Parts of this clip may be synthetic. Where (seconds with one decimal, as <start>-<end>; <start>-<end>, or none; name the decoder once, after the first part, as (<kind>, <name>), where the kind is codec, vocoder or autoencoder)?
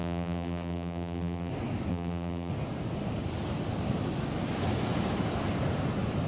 0.0-1.5 (vocoder, BigVGAN v2); 1.9-2.5